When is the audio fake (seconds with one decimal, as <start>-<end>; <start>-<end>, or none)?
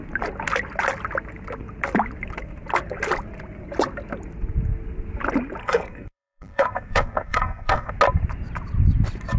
5.6-7.9